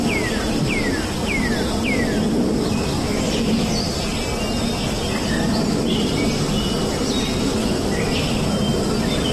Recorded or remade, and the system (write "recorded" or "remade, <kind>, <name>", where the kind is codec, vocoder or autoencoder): recorded